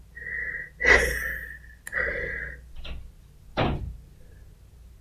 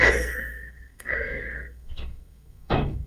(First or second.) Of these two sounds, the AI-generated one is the second